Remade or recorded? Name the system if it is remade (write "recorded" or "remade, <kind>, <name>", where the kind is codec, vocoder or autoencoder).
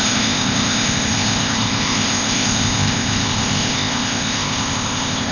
remade, codec, ZipCodec